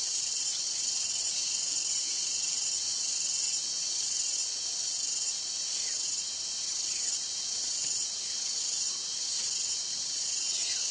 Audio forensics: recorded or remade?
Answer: remade